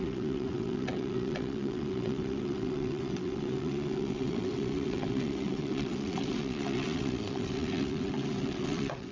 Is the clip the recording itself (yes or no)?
no